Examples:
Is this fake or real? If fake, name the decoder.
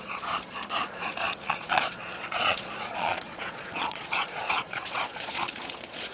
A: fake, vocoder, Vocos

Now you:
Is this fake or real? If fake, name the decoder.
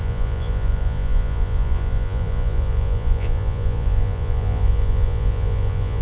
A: fake, vocoder, Vocos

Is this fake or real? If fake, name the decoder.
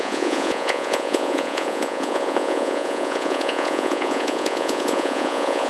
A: fake, vocoder, Vocos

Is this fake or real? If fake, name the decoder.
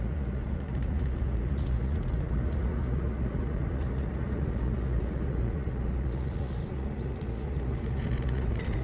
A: fake, vocoder, Vocos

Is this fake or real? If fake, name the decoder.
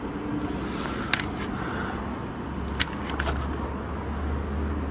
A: real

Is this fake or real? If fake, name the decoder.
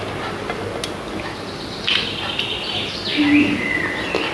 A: real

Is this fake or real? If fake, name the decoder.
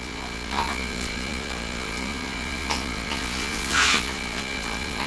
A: fake, vocoder, Vocos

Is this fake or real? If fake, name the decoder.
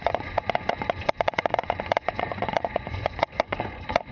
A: fake, vocoder, Vocos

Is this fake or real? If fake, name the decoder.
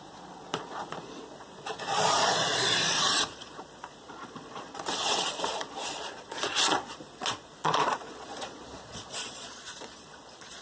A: fake, vocoder, Vocos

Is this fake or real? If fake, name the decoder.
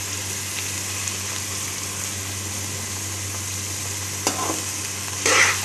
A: real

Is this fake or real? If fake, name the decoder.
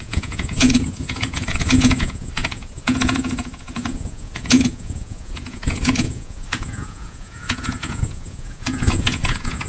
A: fake, vocoder, Vocos